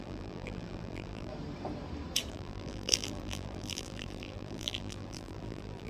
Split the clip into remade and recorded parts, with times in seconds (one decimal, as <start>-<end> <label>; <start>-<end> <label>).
0.0-1.3 remade; 1.3-2.3 recorded; 2.3-5.9 remade